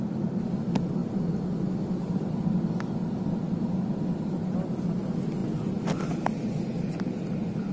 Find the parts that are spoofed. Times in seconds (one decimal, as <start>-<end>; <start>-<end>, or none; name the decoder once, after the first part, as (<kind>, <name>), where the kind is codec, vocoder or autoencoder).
none